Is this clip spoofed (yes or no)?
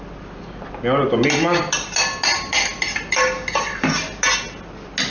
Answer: no